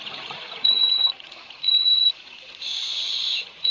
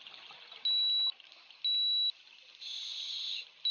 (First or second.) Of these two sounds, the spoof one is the first